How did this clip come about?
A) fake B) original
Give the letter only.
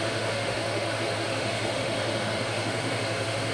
A